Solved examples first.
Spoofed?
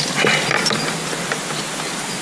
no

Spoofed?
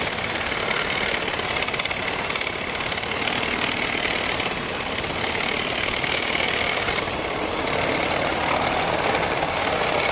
no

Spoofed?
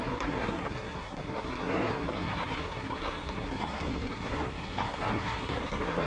yes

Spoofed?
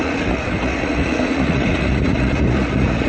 yes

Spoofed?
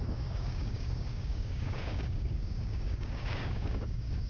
yes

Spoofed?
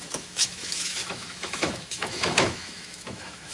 yes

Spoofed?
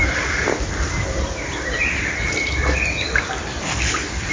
no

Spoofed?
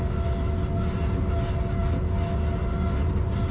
no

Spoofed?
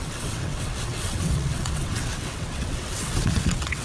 yes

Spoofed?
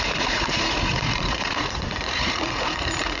yes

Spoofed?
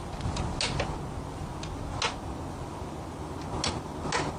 no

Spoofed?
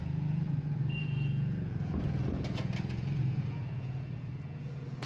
yes